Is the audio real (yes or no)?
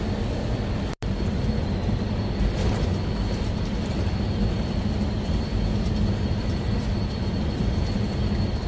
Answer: yes